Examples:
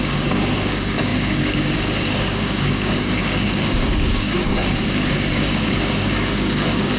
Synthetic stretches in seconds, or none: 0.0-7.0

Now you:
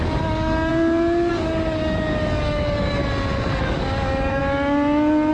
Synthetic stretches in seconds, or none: 0.0-0.7; 1.3-3.0; 3.6-4.4

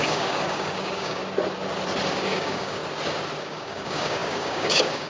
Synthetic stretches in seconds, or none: 0.0-1.2; 2.1-2.8; 3.4-5.1

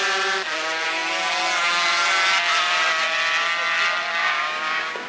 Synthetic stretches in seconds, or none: 4.2-5.1

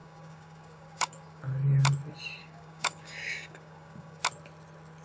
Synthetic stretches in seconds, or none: 0.0-1.4; 2.4-4.2

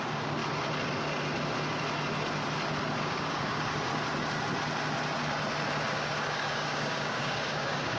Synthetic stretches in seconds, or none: 0.0-0.4; 3.0-3.9; 5.9-8.0